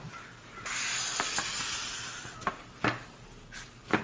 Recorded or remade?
recorded